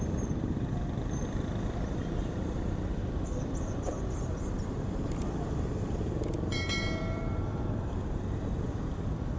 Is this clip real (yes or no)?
no